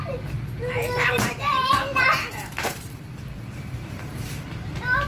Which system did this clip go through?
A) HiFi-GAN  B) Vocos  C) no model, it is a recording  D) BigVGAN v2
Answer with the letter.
D